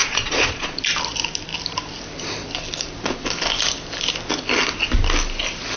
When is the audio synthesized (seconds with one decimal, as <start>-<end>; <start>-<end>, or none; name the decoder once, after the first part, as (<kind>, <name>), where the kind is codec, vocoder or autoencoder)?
0.0-0.8 (vocoder, Vocos)

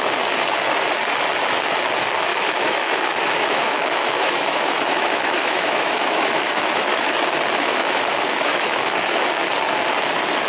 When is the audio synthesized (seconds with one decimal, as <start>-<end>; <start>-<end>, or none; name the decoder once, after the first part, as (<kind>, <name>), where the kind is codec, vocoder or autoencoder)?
2.3-7.1 (autoencoder, DAC-VAE); 7.8-9.0